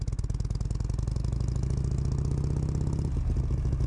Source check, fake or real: real